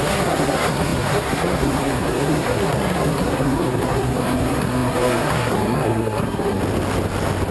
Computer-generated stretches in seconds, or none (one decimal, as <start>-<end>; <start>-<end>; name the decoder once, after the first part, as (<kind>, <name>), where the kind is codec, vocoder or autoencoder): 0.0-6.6 (codec, SNAC)